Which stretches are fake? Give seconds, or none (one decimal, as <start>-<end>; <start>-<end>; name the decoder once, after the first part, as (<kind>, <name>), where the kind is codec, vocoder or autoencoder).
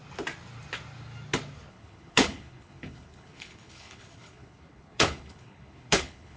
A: 1.7-6.4 (codec, HILCodec)